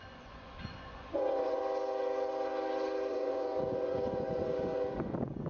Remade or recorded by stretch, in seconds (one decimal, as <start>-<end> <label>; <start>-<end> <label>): 0.0-1.6 remade; 1.6-3.1 recorded; 3.1-5.5 remade